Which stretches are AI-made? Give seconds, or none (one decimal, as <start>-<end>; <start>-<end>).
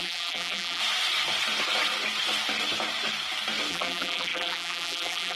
0.0-0.8; 3.7-5.4